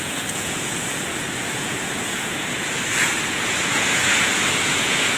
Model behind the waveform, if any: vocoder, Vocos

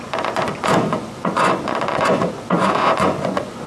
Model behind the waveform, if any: vocoder, Vocos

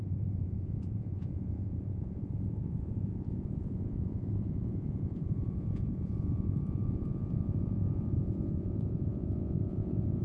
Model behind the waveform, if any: vocoder, Vocos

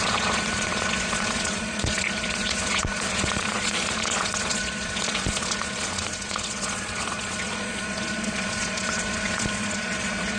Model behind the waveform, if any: vocoder, Vocos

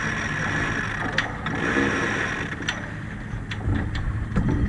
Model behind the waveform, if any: none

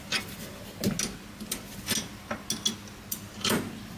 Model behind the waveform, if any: none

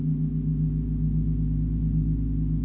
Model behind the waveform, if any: none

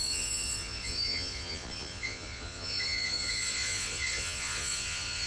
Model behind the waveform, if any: vocoder, Vocos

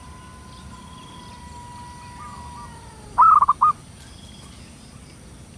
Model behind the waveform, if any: none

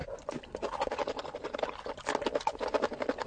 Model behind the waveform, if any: none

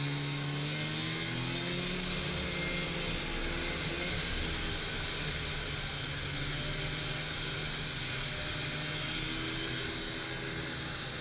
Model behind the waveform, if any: none